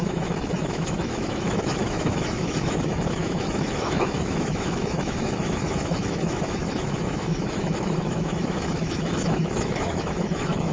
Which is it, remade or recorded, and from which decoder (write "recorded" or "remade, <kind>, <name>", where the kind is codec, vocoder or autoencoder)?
remade, autoencoder, DAC-VAE